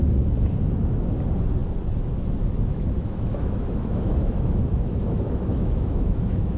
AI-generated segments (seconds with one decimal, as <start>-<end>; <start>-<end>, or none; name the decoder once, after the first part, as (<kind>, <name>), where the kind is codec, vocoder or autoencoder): 2.7-6.6 (autoencoder, DAC-VAE)